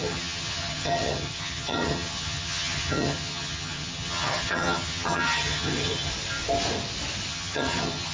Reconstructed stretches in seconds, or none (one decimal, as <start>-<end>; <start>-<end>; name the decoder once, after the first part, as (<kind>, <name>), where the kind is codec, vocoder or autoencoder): 0.0-6.1 (vocoder, HiFi-GAN); 7.3-8.1